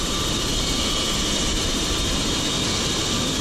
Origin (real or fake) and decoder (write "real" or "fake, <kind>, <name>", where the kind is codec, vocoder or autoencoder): real